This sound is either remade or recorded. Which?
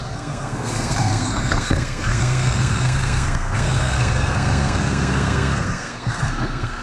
remade